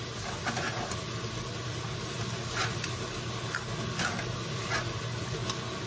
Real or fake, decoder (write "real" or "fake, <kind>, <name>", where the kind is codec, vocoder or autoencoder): real